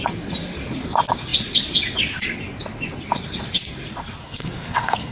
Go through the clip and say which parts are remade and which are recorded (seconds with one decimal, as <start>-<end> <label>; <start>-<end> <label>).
0.0-4.2 recorded; 4.2-5.1 remade